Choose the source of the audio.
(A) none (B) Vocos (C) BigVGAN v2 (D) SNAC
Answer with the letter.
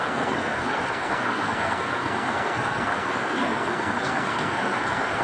D